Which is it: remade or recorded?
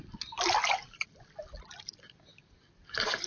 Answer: recorded